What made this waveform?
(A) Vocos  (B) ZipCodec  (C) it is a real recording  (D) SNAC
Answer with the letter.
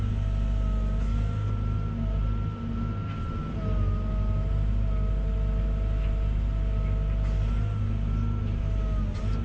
C